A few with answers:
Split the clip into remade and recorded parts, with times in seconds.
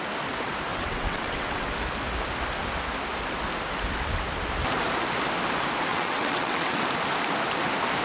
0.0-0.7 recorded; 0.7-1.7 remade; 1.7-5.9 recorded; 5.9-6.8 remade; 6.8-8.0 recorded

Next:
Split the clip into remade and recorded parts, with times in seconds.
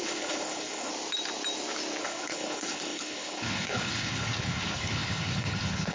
0.0-0.9 remade; 0.9-2.0 recorded; 2.0-5.9 remade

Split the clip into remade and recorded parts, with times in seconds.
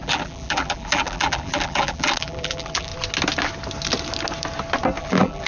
0.0-2.9 remade; 2.9-5.0 recorded; 5.0-5.5 remade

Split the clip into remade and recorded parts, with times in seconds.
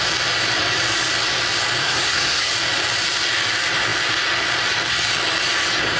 0.0-1.8 recorded; 1.8-2.5 remade; 2.5-6.0 recorded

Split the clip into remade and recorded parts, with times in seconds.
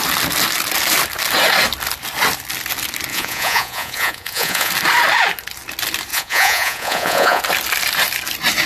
0.0-3.1 recorded; 3.1-4.7 remade; 4.7-6.1 recorded; 6.1-7.4 remade; 7.4-8.7 recorded